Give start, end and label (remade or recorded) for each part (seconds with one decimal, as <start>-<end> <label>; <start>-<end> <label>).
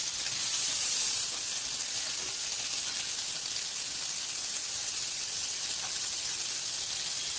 0.0-4.6 recorded; 4.6-5.6 remade; 5.6-7.4 recorded